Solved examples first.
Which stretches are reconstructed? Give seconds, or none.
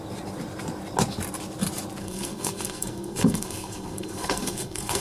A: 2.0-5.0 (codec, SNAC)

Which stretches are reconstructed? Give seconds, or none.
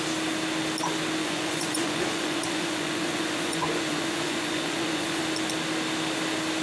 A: 1.2-5.2 (vocoder, Vocos)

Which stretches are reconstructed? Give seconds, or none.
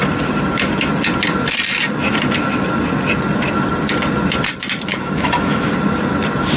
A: 4.9-5.7 (autoencoder, DAC-VAE)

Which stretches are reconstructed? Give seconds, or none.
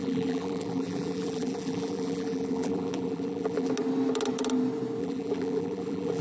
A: 0.0-3.7 (vocoder, BigVGAN v2); 5.0-6.2